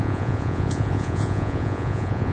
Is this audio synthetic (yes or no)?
yes